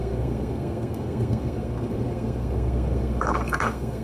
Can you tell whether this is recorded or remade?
remade